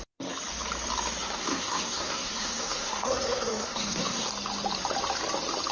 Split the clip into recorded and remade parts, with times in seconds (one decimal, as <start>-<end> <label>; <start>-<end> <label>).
0.0-1.2 recorded; 1.2-4.3 remade; 4.3-5.7 recorded